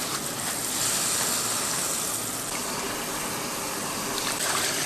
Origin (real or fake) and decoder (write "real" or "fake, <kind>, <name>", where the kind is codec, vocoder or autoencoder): real